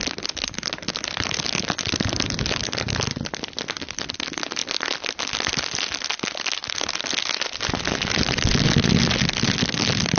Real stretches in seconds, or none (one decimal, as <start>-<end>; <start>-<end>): 0.0-10.2